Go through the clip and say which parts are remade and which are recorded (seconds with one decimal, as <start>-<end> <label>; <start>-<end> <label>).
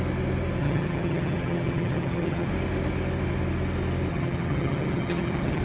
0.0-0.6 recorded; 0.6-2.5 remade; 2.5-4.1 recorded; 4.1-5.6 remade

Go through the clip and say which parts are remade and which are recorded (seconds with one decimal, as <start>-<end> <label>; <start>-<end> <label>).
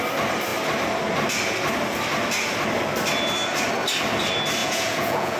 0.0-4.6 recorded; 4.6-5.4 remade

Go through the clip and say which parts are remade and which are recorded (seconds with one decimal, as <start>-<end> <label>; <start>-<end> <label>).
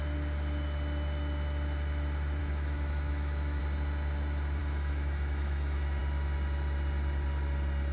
0.0-2.4 recorded; 2.4-3.6 remade; 3.6-4.6 recorded; 4.6-6.0 remade; 6.0-7.9 recorded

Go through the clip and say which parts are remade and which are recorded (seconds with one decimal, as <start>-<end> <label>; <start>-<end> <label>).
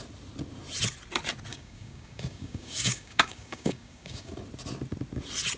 0.0-1.5 recorded; 1.5-4.3 remade; 4.3-5.6 recorded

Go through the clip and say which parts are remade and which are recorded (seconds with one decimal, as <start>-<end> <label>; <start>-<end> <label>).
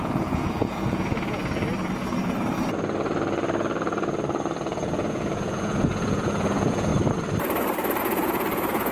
0.0-1.4 remade; 1.4-4.6 recorded; 4.6-6.9 remade; 6.9-8.0 recorded; 8.0-8.9 remade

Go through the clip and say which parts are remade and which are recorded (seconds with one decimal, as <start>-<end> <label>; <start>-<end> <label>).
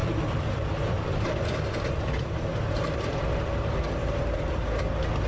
0.0-3.2 remade; 3.2-4.0 recorded; 4.0-4.5 remade; 4.5-5.3 recorded